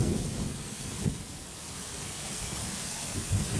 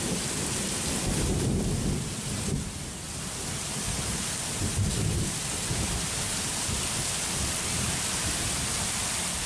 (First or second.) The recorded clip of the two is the second